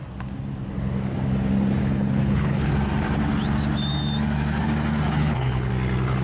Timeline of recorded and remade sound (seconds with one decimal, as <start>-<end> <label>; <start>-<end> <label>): 0.0-1.8 recorded; 1.8-2.7 remade; 2.7-5.1 recorded; 5.1-5.7 remade; 5.7-6.2 recorded